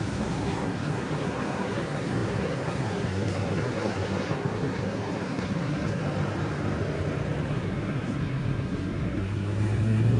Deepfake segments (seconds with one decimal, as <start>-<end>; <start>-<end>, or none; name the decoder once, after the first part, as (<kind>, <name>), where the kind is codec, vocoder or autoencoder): 0.0-6.0 (codec, SNAC); 7.5-10.2